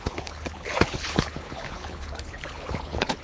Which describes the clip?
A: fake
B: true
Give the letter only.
A